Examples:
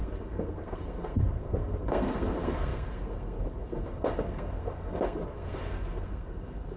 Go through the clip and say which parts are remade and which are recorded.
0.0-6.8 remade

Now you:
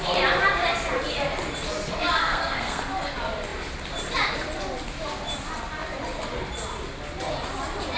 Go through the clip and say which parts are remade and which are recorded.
0.0-2.2 recorded; 2.2-2.8 remade; 2.8-8.0 recorded

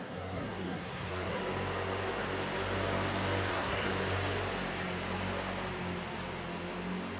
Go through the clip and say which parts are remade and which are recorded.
0.0-1.4 remade; 1.4-3.5 recorded; 3.5-3.9 remade; 3.9-7.2 recorded

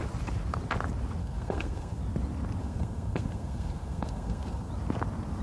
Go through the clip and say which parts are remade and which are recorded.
0.0-1.2 recorded; 1.2-2.0 remade; 2.0-2.6 recorded; 2.6-4.7 remade; 4.7-5.4 recorded

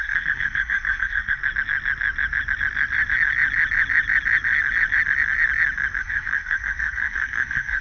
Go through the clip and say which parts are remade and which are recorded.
0.0-1.4 remade; 1.4-6.0 recorded; 6.0-7.8 remade

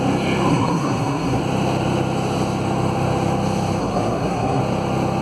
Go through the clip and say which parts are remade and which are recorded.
0.0-0.5 recorded; 0.5-1.4 remade; 1.4-3.8 recorded; 3.8-4.6 remade; 4.6-5.2 recorded

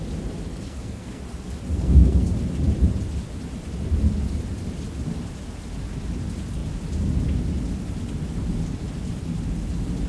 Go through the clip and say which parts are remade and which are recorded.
0.0-0.5 recorded; 0.5-1.2 remade; 1.2-1.7 recorded; 1.7-2.3 remade; 2.3-10.1 recorded